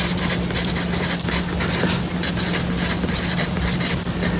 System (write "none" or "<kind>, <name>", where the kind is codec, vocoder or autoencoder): none